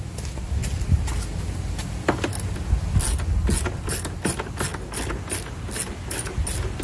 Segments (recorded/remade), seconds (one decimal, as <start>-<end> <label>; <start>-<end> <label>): 0.0-6.8 recorded